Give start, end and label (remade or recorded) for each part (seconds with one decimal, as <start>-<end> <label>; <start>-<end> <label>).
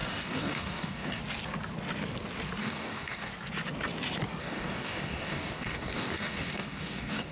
0.0-1.2 remade; 1.2-2.6 recorded; 2.6-3.3 remade; 3.3-4.4 recorded; 4.4-7.3 remade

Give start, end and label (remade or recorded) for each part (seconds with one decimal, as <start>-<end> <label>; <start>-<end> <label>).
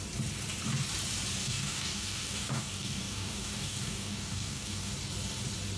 0.0-1.4 recorded; 1.4-4.9 remade; 4.9-5.8 recorded